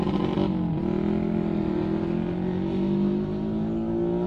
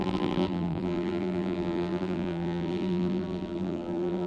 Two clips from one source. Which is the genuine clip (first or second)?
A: first